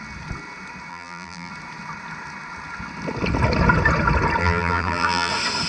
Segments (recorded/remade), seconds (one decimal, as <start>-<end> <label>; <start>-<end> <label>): 0.0-0.9 recorded; 0.9-1.5 remade; 1.5-4.4 recorded; 4.4-5.3 remade; 5.3-5.7 recorded